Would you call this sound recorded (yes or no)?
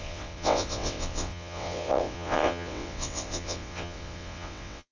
no